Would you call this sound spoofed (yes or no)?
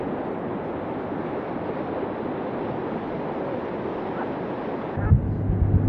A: no